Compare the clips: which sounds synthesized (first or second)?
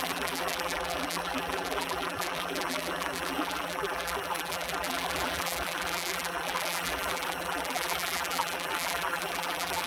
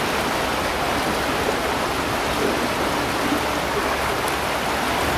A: first